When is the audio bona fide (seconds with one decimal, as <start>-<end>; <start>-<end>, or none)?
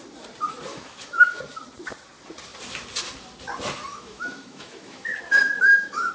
0.0-0.7; 1.4-3.9